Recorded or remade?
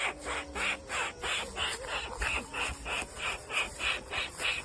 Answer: recorded